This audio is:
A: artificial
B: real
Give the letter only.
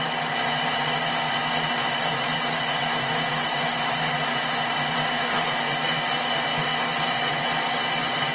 B